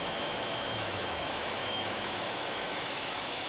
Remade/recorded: remade